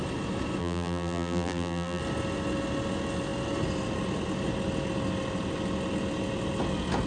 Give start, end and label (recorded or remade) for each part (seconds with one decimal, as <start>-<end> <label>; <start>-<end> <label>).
0.0-0.6 recorded; 0.6-2.0 remade; 2.0-7.1 recorded